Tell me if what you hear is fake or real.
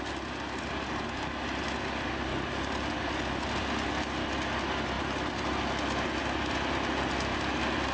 real